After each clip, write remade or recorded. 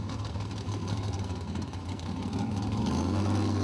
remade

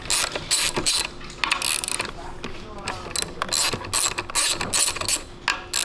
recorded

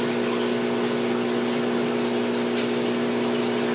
recorded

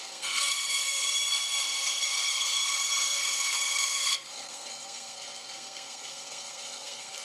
remade